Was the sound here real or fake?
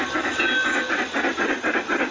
real